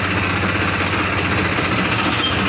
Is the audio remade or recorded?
recorded